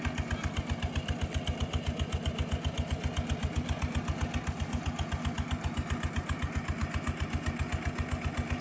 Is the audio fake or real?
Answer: real